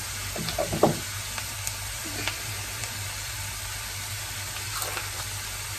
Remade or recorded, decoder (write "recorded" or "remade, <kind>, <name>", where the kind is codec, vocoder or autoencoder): recorded